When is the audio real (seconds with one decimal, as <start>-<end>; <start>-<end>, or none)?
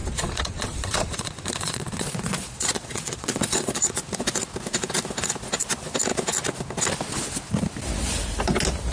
4.2-8.9